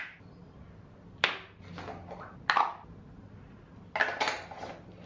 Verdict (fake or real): real